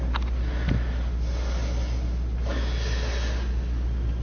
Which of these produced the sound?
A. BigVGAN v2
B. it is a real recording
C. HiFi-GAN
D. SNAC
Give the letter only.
B